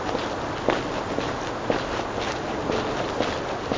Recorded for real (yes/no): yes